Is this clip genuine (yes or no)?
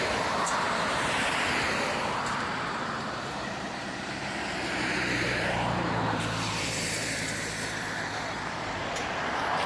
no